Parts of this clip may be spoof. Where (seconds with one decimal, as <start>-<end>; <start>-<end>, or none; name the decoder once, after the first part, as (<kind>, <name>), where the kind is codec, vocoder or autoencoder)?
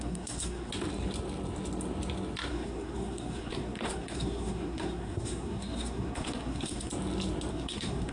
0.0-0.7 (codec, SNAC); 2.5-6.9; 7.5-8.1